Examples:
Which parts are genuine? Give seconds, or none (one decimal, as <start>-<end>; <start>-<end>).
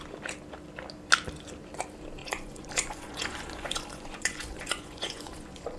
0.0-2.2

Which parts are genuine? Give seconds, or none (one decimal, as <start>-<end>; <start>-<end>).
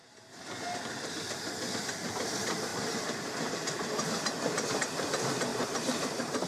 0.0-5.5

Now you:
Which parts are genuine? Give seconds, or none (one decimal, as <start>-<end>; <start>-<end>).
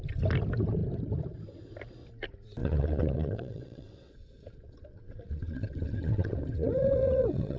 0.0-2.6